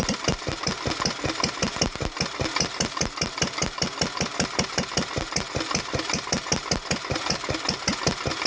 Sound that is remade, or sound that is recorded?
recorded